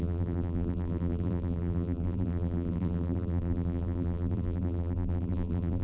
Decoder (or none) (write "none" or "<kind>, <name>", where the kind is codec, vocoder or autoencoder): vocoder, BigVGAN v2